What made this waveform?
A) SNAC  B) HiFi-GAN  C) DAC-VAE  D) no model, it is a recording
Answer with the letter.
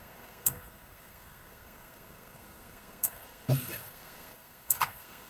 A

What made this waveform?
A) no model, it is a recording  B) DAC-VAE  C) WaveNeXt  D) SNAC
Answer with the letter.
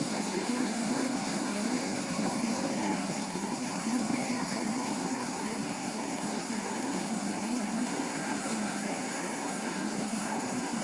D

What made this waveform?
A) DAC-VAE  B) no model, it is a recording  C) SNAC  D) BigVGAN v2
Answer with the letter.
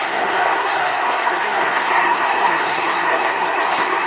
C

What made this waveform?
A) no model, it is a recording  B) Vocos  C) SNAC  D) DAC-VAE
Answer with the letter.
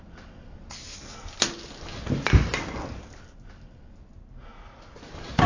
A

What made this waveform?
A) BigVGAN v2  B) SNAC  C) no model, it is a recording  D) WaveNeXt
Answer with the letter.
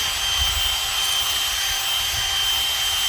C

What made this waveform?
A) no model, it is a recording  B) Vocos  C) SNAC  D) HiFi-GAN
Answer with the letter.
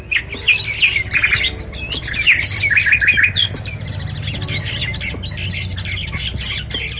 A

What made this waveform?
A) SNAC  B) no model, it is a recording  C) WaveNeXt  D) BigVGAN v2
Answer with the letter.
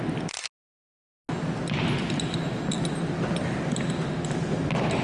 B